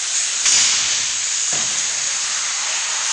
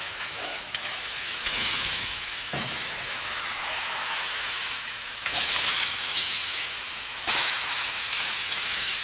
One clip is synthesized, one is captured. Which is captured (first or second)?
first